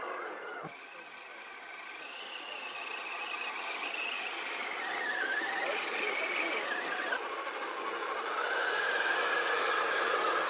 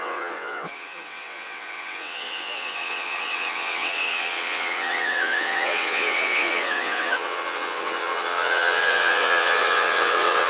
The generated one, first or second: second